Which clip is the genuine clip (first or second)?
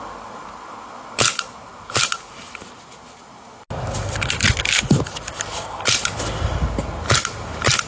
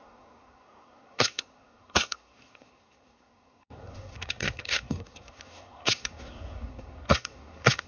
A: first